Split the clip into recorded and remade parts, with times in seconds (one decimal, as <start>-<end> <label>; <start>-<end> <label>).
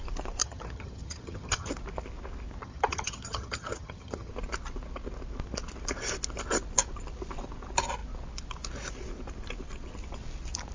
0.0-0.4 recorded; 0.4-1.7 remade; 1.7-2.6 recorded; 2.6-4.3 remade; 4.3-10.7 recorded